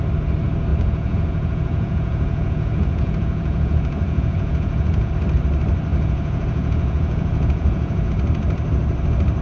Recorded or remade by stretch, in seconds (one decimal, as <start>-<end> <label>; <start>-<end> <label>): 0.0-0.7 recorded; 0.7-5.1 remade; 5.1-5.9 recorded; 5.9-8.1 remade; 8.1-9.4 recorded